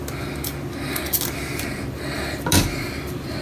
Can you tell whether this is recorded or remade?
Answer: recorded